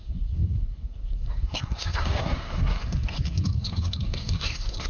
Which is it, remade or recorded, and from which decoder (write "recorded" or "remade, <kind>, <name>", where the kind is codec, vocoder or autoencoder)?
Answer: remade, codec, SNAC